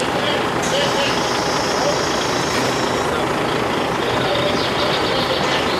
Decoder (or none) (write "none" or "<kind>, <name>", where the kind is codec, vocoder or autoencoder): none